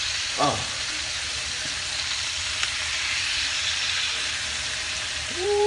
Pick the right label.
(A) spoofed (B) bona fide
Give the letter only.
A